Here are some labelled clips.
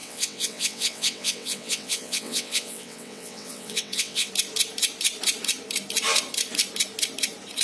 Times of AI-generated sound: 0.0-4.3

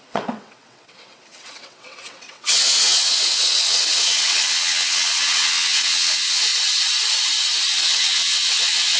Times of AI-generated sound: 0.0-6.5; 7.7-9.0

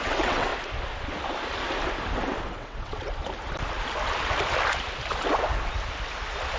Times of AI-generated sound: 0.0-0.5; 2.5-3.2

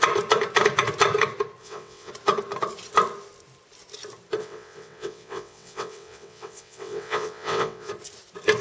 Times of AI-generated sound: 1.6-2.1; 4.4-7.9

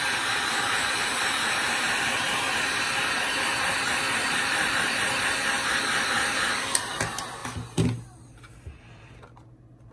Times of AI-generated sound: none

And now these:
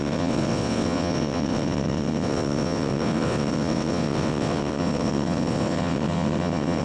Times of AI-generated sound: 0.0-6.8

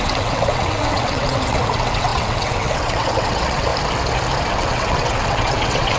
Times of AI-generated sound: 0.0-3.7; 4.5-6.0

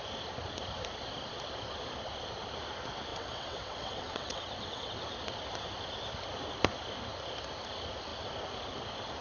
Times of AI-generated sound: 3.1-4.9